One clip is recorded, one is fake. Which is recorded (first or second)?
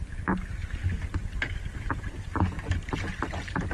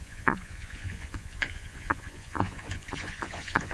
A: first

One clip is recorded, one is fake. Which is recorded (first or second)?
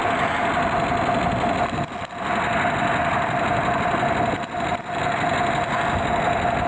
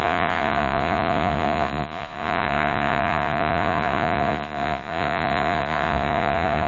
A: first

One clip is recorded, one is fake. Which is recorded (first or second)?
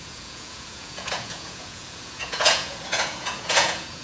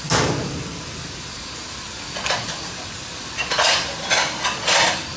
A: second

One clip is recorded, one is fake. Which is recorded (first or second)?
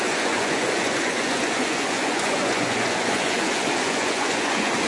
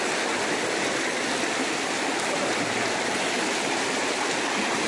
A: second